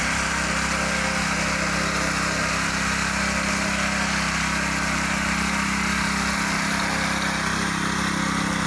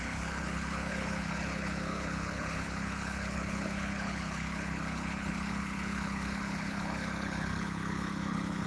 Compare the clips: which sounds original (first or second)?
first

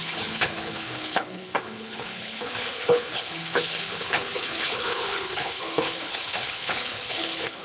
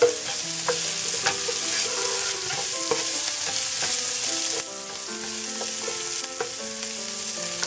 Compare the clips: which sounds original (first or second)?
second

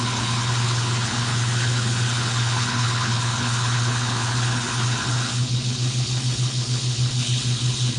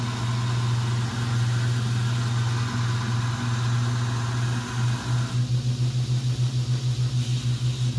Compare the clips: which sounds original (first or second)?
second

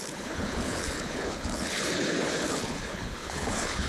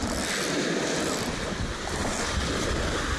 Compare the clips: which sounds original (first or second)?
second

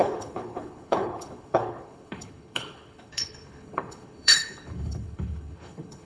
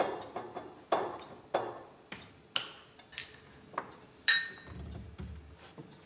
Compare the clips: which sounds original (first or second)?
second